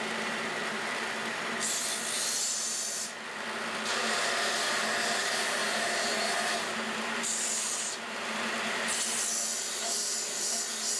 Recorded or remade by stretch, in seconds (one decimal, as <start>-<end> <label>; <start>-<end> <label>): 0.0-5.2 recorded; 5.2-8.9 remade; 8.9-11.0 recorded